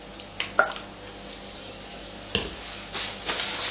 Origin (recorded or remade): recorded